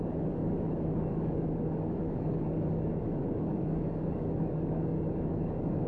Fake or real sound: fake